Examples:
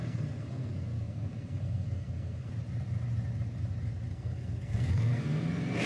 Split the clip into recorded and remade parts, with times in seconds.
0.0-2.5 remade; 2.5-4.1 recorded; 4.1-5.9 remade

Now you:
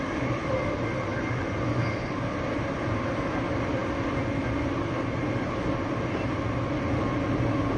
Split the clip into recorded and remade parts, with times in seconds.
0.0-7.8 recorded

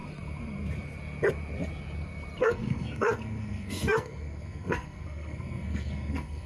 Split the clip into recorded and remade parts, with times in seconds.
0.0-2.4 recorded; 2.4-6.5 remade

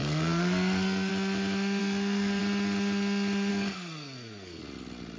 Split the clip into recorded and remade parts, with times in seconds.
0.0-1.1 remade; 1.1-1.8 recorded; 1.8-2.4 remade; 2.4-3.5 recorded; 3.5-4.6 remade; 4.6-5.2 recorded